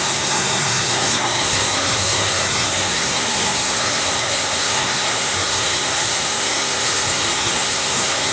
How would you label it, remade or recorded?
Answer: remade